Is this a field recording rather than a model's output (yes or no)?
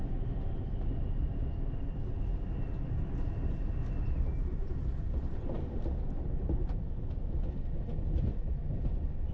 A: yes